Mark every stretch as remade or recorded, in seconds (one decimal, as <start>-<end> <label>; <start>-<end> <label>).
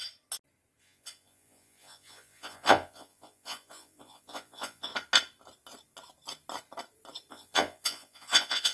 0.0-0.8 recorded; 0.8-4.9 remade; 4.9-7.3 recorded; 7.3-8.7 remade